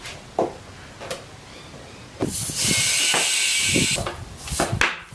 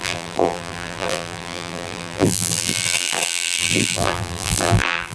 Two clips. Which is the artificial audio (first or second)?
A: second